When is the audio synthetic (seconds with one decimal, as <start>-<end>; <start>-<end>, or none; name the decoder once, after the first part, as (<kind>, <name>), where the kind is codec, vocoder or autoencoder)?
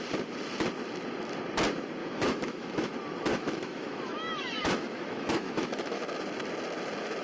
2.0-2.9 (autoencoder, DAC-VAE); 3.3-6.0